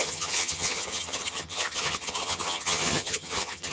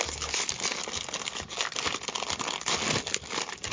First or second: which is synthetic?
first